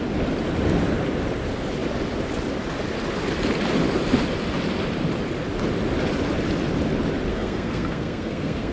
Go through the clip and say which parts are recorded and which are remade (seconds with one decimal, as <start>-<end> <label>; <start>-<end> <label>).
0.0-7.3 recorded; 7.3-8.7 remade